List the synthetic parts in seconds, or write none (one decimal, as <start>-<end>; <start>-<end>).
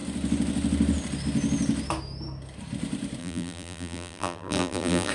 3.2-5.1